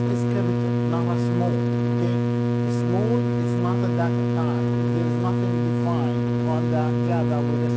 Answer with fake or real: real